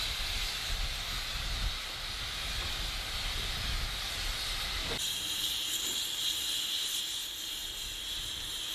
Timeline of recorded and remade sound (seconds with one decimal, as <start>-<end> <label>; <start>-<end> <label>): 0.0-8.7 recorded